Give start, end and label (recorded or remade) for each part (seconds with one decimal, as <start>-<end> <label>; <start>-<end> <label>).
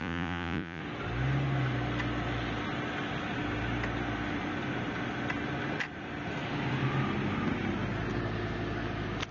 0.0-0.8 remade; 0.8-9.3 recorded